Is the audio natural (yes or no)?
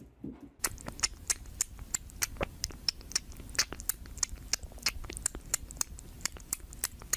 yes